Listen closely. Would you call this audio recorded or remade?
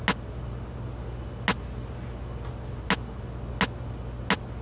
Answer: recorded